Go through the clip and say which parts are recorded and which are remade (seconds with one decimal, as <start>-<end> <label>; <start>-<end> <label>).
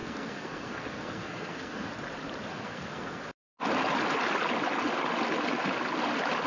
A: 0.0-1.9 remade; 1.9-2.5 recorded; 2.5-3.2 remade; 3.2-6.5 recorded